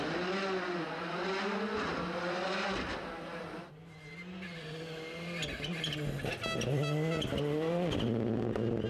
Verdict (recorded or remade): recorded